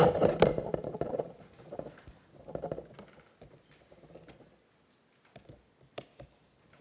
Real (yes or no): yes